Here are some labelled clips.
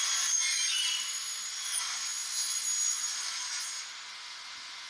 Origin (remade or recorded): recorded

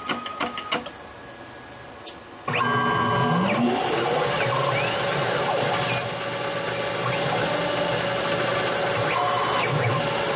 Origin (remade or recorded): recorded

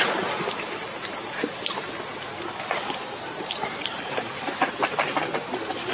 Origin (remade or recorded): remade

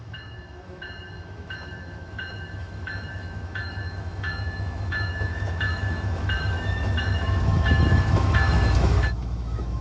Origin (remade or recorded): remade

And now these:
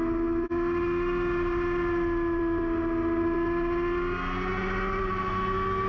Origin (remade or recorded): recorded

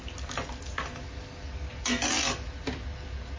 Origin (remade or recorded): recorded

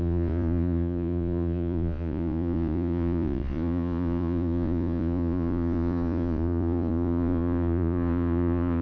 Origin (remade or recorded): remade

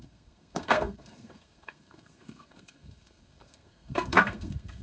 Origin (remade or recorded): remade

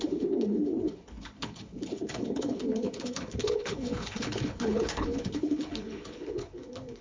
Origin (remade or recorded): remade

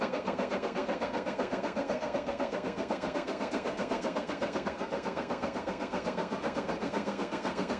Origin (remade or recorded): remade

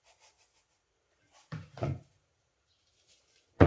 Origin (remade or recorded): remade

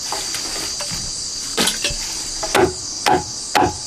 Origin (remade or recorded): recorded